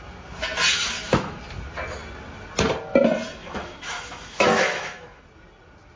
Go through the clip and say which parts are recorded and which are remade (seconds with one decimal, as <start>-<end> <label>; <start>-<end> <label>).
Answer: 0.0-0.7 recorded; 0.7-1.4 remade; 1.4-3.4 recorded; 3.4-5.2 remade; 5.2-6.0 recorded